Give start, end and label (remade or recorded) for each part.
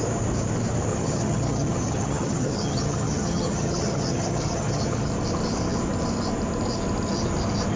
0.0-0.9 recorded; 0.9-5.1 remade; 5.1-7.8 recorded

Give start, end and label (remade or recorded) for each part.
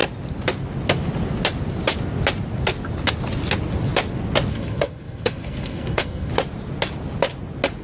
0.0-4.5 recorded; 4.5-6.3 remade; 6.3-7.8 recorded